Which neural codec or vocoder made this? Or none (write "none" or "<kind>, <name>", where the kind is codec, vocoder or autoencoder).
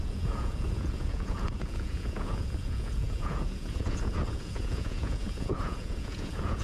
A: vocoder, Vocos